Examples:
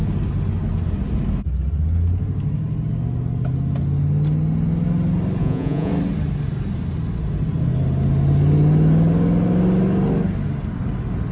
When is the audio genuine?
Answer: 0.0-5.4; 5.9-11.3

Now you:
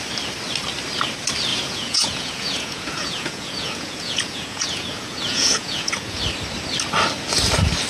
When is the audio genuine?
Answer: 0.0-1.5; 6.2-7.9

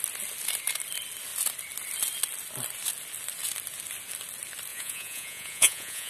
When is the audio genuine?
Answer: 0.0-4.7